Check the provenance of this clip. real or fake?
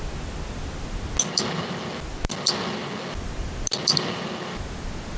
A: real